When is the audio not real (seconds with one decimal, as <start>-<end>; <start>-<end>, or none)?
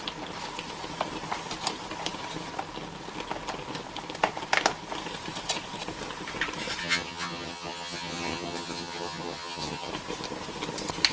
6.8-9.9